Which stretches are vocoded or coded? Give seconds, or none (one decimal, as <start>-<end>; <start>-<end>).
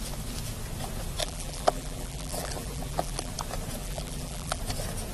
1.2-3.3; 3.8-4.6